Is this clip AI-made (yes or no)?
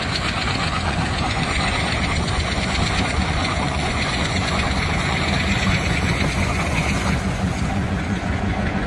yes